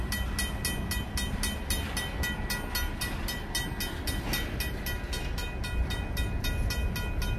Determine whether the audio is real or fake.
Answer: real